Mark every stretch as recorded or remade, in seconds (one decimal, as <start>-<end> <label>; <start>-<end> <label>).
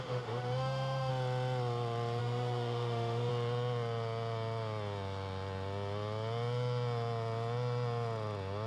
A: 0.0-1.1 remade; 1.1-2.2 recorded; 2.2-3.3 remade; 3.3-8.7 recorded